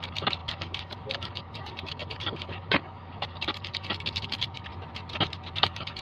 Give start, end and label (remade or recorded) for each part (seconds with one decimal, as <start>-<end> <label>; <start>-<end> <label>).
0.0-4.7 remade; 4.7-5.6 recorded; 5.6-6.0 remade